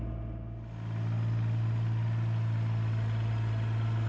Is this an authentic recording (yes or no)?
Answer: yes